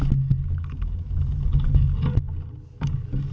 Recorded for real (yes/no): yes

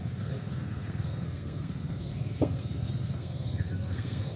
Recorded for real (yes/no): no